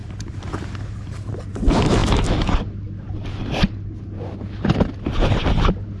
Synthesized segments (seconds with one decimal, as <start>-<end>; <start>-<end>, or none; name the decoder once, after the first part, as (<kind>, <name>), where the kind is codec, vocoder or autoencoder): 0.0-1.3 (vocoder, BigVGAN v2)